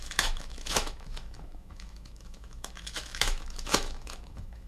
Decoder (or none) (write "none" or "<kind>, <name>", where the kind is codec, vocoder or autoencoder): autoencoder, DAC-VAE